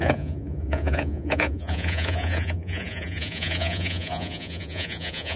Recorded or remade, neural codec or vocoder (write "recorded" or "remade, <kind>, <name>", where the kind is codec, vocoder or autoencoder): remade, vocoder, Vocos